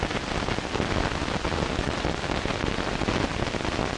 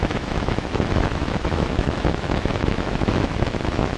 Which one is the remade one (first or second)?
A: second